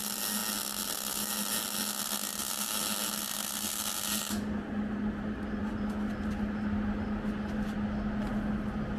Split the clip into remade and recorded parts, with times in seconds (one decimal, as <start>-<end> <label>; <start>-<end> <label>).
0.0-9.0 recorded